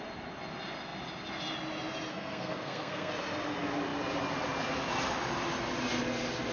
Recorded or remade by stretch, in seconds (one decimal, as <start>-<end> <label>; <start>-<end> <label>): 0.0-2.1 recorded; 2.1-3.1 remade; 3.1-6.5 recorded